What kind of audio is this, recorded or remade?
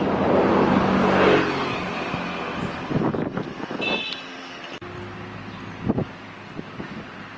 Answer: recorded